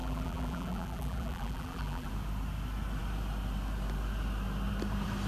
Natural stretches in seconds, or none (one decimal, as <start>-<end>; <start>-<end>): 2.1-5.3